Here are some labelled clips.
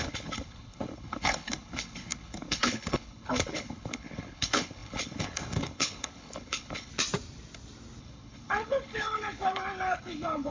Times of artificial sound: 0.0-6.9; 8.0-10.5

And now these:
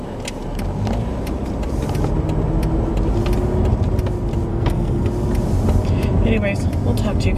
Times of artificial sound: 4.5-5.1

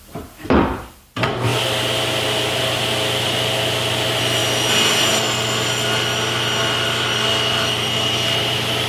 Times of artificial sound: 0.0-1.5; 2.6-4.4; 7.5-8.9